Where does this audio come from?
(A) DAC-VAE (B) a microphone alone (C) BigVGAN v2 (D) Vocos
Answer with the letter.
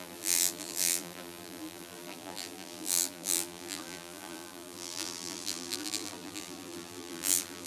C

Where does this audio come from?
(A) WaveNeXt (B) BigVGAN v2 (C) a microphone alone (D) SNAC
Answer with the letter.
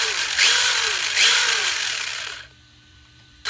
B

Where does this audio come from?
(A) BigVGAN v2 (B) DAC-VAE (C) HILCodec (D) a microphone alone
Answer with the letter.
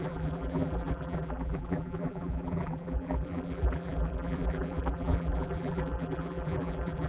A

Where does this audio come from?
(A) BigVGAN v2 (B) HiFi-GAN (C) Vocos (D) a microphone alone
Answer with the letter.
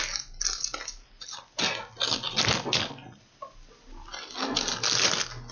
D